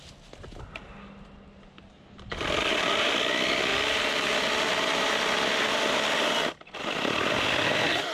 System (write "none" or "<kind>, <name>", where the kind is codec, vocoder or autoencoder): none